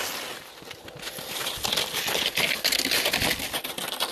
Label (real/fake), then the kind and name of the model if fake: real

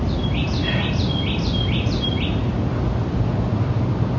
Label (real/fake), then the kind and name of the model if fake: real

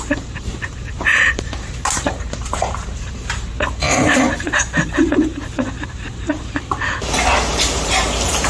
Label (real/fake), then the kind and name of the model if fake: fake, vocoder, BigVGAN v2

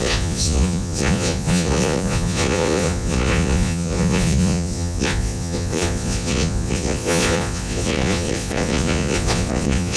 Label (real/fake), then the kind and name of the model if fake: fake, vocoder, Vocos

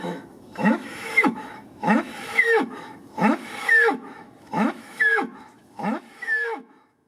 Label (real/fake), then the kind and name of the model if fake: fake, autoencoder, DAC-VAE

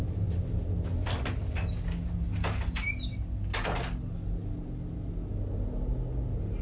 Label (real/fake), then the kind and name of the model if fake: real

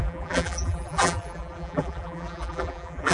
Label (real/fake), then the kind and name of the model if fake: fake, vocoder, BigVGAN v2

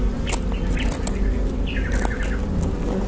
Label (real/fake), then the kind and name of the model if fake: real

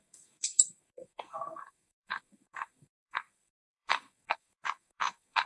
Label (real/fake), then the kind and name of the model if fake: fake, codec, SNAC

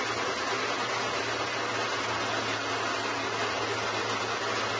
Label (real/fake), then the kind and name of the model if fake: real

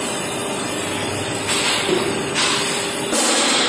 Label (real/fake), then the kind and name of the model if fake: real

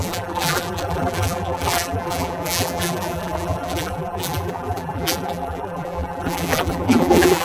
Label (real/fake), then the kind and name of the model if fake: fake, vocoder, BigVGAN v2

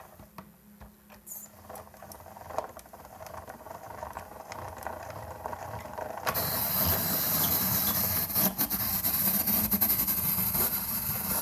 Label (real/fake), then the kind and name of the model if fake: real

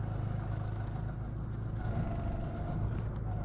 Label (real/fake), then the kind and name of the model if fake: real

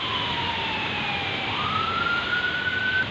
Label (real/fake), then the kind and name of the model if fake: real